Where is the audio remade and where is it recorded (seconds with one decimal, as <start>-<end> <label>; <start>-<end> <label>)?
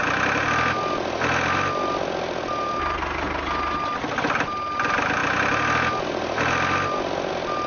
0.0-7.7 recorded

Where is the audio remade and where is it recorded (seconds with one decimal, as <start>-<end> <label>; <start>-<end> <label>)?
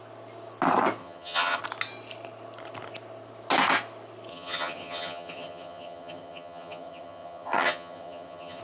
0.0-1.0 recorded; 1.0-1.6 remade; 1.6-4.3 recorded; 4.3-8.6 remade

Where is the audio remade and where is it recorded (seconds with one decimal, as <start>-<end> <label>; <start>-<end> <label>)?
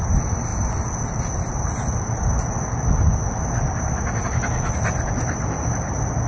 0.0-6.3 recorded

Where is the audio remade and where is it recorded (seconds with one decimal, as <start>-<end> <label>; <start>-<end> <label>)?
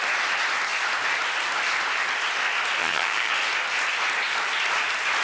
0.0-2.8 recorded; 2.8-3.3 remade; 3.3-5.2 recorded